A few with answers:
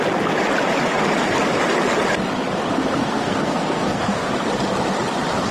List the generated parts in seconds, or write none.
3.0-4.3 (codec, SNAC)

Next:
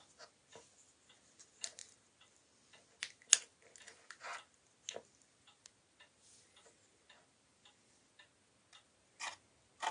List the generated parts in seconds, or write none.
none

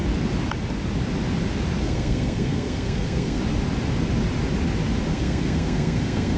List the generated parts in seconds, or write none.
1.8-3.4 (codec, SNAC); 5.1-6.4

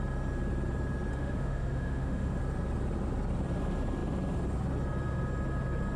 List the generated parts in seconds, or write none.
1.1-2.4 (autoencoder, DAC-VAE)

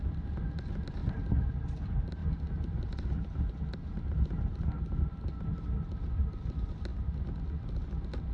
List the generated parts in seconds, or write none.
2.2-3.4 (vocoder, BigVGAN v2)

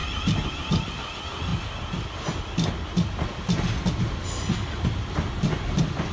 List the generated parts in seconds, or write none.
0.0-0.7 (vocoder, BigVGAN v2)

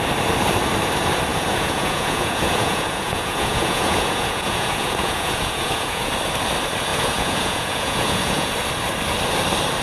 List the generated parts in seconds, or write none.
1.3-6.1 (vocoder, Vocos); 6.9-8.5